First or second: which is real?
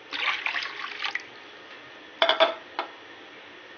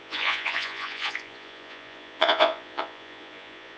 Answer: first